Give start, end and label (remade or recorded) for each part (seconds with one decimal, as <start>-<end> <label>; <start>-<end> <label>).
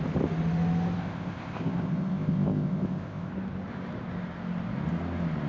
0.0-1.0 recorded; 1.0-3.3 remade; 3.3-5.5 recorded